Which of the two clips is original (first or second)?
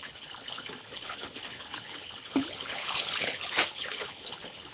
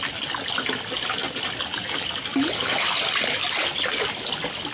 second